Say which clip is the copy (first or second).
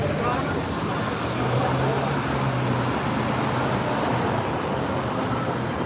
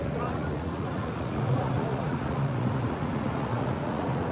second